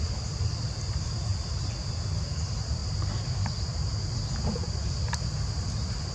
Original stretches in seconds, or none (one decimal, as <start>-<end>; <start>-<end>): 0.0-6.1